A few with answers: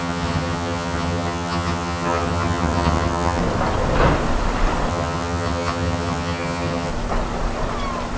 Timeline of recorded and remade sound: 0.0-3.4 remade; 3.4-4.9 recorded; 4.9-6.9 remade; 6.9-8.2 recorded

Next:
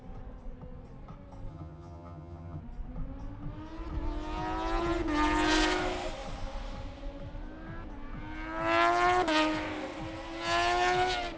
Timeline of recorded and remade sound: 0.0-1.5 recorded; 1.5-2.6 remade; 2.6-11.4 recorded

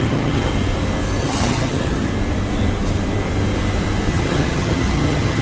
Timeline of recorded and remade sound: 0.0-0.5 remade; 0.5-1.2 recorded; 1.2-2.1 remade; 2.1-4.1 recorded; 4.1-5.4 remade

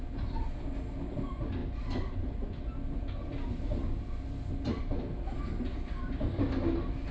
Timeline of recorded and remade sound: 0.0-7.1 recorded

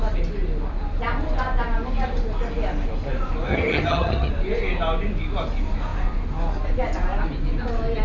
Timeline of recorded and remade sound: 0.0-3.5 recorded; 3.5-4.3 remade; 4.3-8.0 recorded